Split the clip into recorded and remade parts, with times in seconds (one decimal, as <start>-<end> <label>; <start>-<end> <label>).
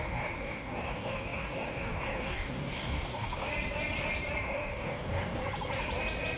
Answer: 0.0-3.5 remade; 3.5-4.4 recorded; 4.4-5.4 remade; 5.4-6.4 recorded